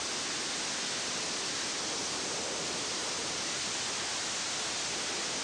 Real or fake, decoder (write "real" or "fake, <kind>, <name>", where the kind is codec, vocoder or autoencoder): real